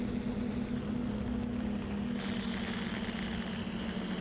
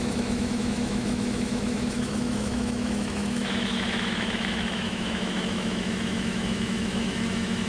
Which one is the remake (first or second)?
second